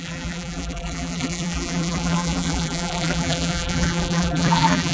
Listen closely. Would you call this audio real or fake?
fake